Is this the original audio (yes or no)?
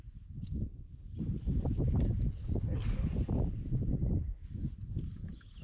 yes